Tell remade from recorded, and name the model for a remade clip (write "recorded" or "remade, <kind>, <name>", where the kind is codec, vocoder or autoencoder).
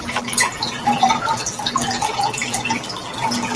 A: remade, vocoder, BigVGAN v2